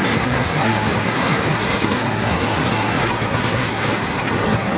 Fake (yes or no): yes